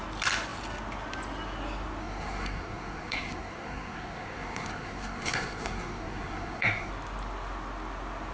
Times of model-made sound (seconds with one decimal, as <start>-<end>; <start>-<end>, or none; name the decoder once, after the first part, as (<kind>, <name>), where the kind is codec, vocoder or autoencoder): 2.0-6.9 (codec, SNAC)